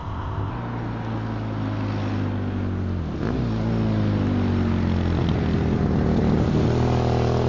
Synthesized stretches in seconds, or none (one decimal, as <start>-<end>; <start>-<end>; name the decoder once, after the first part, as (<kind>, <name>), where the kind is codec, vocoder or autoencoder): 0.0-0.5 (codec, ZipCodec)